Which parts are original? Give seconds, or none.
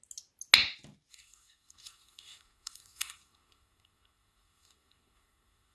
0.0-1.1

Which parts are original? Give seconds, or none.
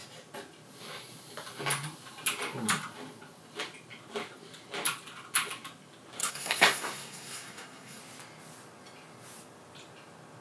0.0-6.2; 8.0-10.4